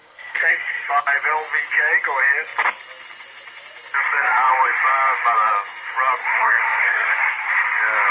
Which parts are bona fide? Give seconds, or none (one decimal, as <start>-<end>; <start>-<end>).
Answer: 0.9-6.2; 7.5-8.1